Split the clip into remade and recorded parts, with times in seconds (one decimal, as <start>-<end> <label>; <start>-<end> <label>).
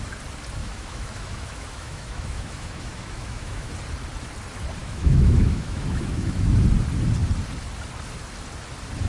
0.0-0.6 recorded; 0.6-3.7 remade; 3.7-4.8 recorded; 4.8-6.6 remade; 6.6-9.1 recorded